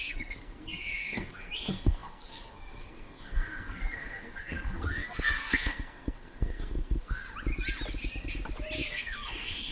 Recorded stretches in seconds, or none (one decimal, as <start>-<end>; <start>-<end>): 7.2-8.9